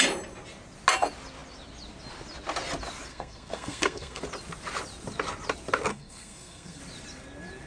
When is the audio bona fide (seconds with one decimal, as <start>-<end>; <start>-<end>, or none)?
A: 0.0-3.1; 4.2-5.9; 6.8-7.7

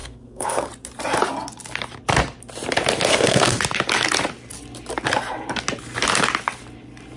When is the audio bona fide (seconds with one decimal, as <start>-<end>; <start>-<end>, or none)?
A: 0.7-3.1; 3.6-7.2

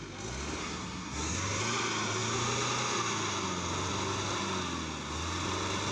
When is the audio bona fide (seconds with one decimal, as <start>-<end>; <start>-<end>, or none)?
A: 0.0-0.6; 1.6-5.9